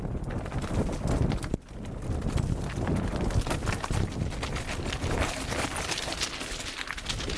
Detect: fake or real real